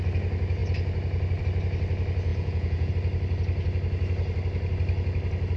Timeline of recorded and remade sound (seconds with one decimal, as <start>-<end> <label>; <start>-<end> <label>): 0.0-2.3 recorded; 2.3-2.9 remade; 2.9-5.6 recorded